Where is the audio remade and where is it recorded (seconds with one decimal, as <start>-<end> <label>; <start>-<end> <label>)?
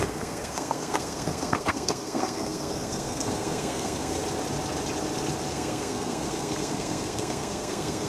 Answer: 0.0-4.2 remade; 4.2-5.5 recorded; 5.5-8.1 remade